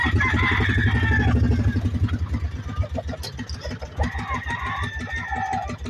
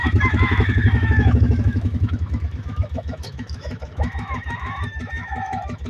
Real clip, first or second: first